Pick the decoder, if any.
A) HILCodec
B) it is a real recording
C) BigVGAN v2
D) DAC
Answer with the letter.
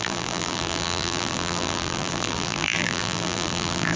C